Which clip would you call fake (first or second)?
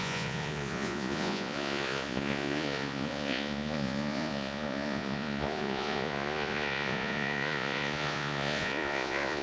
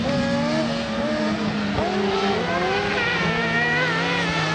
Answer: first